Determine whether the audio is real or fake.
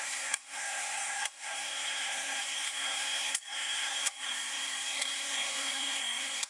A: fake